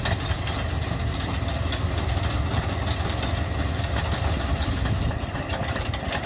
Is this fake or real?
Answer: real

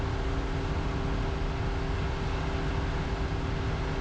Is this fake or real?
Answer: real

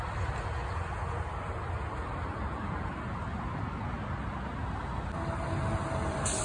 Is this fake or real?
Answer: real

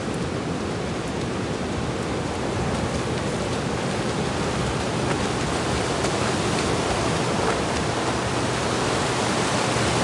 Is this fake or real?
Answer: real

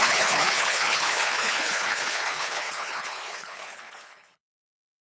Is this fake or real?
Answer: fake